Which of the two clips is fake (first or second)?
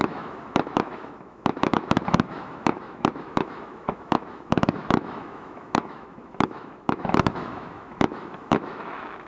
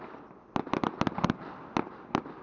first